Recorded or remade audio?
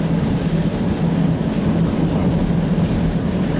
recorded